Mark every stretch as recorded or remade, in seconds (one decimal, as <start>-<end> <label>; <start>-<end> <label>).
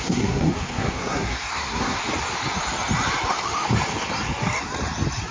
0.0-2.0 remade; 2.0-5.3 recorded